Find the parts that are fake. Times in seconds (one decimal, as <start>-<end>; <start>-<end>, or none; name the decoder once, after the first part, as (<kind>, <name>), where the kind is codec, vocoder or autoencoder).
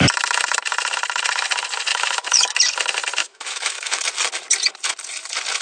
1.9-2.6 (autoencoder, DAC-VAE); 3.2-4.0